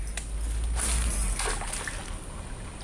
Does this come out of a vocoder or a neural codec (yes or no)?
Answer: no